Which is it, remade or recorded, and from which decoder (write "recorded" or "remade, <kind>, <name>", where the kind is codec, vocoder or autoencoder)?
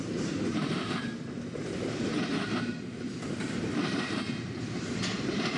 remade, vocoder, BigVGAN v2